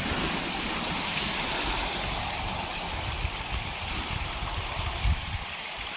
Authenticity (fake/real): fake